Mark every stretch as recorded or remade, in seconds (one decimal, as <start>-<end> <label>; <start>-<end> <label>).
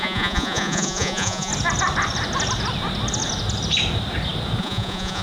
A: 0.0-1.5 remade; 1.5-4.6 recorded; 4.6-5.2 remade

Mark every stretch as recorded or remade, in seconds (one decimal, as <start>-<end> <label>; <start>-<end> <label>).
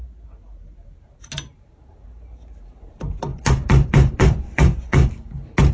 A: 0.0-3.3 recorded; 3.3-5.1 remade; 5.1-5.7 recorded